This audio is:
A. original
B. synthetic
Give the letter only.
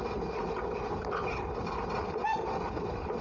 A